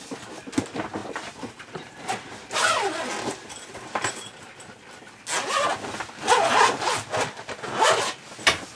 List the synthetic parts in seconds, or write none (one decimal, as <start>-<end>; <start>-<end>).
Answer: 1.0-2.3